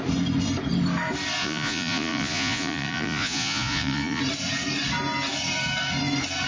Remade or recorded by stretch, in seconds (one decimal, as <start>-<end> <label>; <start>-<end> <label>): 0.0-1.4 recorded; 1.4-4.2 remade; 4.2-6.5 recorded